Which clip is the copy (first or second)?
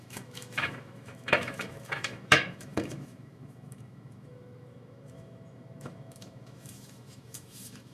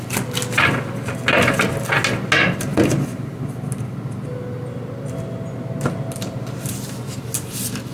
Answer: first